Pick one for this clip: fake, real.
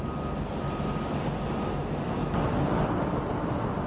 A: real